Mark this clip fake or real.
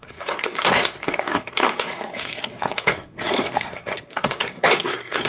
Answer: fake